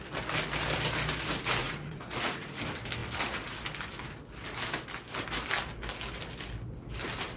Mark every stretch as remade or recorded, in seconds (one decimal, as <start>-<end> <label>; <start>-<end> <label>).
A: 0.0-1.6 recorded; 1.6-2.6 remade; 2.6-7.4 recorded